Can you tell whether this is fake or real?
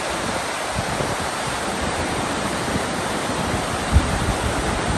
fake